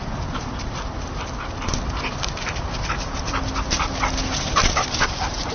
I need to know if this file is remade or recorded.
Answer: remade